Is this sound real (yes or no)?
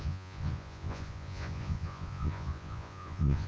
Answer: no